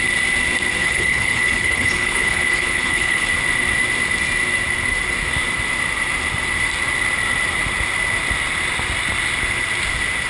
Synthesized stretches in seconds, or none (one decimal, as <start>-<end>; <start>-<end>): 0.8-3.3